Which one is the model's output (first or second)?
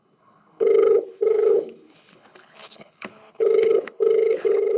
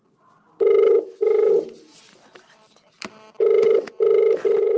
first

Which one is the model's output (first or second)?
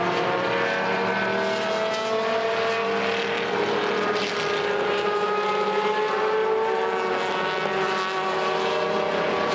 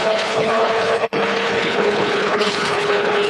second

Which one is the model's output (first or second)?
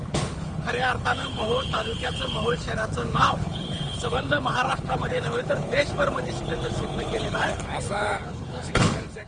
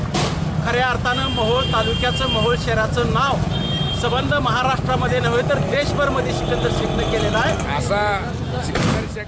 first